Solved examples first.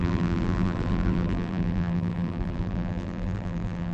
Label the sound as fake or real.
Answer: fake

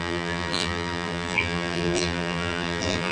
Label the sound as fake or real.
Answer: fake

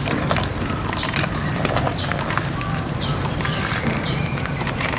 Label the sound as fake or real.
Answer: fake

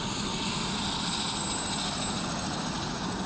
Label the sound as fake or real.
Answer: real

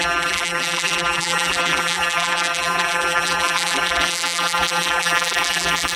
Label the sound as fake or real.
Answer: fake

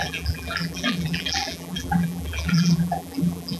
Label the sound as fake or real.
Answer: fake